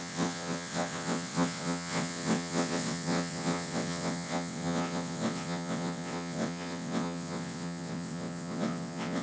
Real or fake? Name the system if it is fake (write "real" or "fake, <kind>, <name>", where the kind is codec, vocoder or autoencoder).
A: fake, vocoder, WaveNeXt